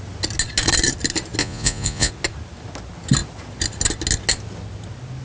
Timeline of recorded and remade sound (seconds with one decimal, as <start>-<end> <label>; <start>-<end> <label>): 0.0-1.4 recorded; 1.4-2.1 remade; 2.1-5.2 recorded